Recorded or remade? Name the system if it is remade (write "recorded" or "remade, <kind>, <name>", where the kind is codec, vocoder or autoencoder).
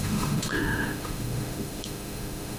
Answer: remade, autoencoder, DAC-VAE